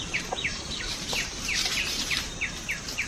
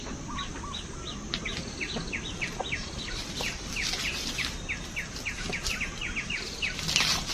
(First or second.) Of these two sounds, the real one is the second